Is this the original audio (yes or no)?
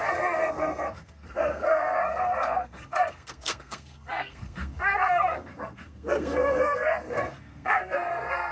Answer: no